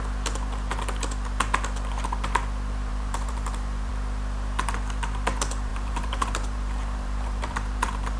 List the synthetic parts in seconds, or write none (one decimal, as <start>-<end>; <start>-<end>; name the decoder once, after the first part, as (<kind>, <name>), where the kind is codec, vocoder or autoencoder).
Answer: 2.9-3.9 (vocoder, BigVGAN v2); 5.7-8.2